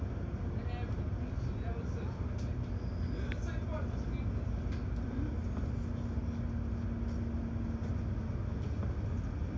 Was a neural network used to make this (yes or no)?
no